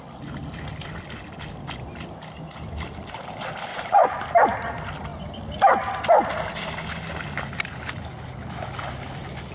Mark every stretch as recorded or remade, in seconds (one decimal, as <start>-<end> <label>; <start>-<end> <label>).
0.0-3.7 recorded; 3.7-4.2 remade; 4.2-9.5 recorded